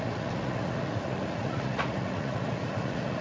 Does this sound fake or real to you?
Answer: fake